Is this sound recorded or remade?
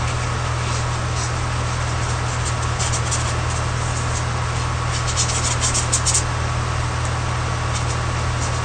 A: recorded